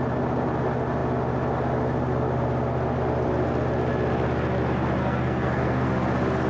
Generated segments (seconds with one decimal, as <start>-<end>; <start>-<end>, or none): 5.0-5.9